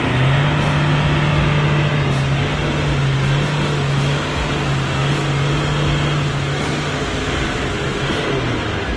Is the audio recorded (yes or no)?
yes